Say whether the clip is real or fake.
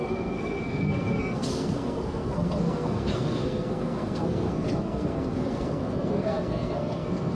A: fake